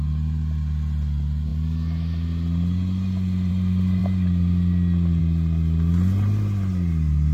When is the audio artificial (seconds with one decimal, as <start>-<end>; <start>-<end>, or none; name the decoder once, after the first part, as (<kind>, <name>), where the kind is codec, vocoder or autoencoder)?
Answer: none

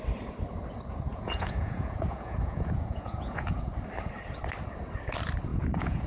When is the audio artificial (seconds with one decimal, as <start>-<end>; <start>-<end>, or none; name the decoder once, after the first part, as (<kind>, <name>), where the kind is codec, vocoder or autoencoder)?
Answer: 1.1-3.7 (vocoder, Vocos); 5.5-6.1

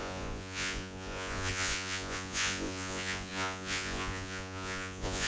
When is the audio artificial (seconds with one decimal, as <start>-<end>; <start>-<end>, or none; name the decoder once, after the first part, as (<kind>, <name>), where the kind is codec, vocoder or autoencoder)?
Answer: 0.0-5.3 (vocoder, Vocos)

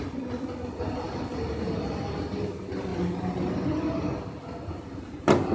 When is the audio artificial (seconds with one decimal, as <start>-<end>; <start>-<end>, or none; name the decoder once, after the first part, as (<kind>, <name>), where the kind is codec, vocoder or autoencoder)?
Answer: none

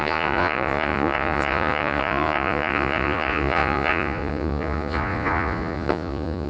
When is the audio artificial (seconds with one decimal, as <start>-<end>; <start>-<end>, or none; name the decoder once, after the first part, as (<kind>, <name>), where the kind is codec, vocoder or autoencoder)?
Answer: 0.0-6.5 (vocoder, Vocos)